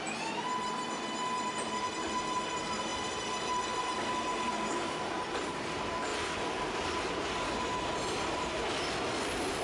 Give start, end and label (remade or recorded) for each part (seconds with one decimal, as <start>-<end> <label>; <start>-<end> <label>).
0.0-9.6 recorded